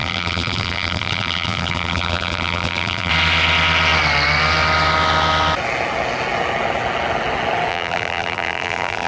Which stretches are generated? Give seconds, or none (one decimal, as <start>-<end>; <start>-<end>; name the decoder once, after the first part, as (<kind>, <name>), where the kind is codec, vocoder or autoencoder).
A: 0.0-3.1 (vocoder, BigVGAN v2); 7.7-9.1